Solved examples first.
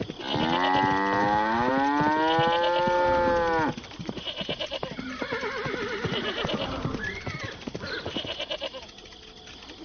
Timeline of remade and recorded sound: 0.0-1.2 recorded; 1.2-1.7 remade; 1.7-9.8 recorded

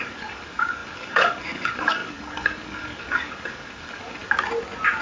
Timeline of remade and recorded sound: 0.0-4.2 remade; 4.2-5.0 recorded

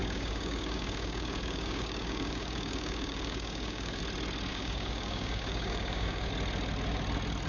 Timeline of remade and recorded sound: 0.0-4.0 remade; 4.0-4.5 recorded; 4.5-6.3 remade; 6.3-7.5 recorded

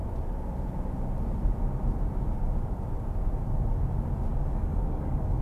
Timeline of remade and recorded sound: 0.0-4.3 recorded; 4.3-5.4 remade

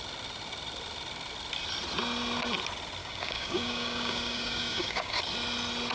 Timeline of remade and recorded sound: 0.0-3.0 recorded; 3.0-5.2 remade; 5.2-5.9 recorded

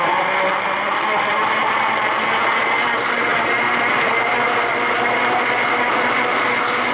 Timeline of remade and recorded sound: 0.0-6.9 recorded

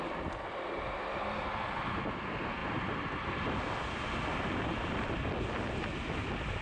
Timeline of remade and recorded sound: 0.0-6.6 recorded

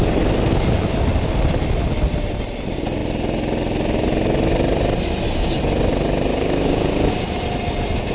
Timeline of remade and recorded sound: 0.0-6.3 recorded; 6.3-7.1 remade; 7.1-8.1 recorded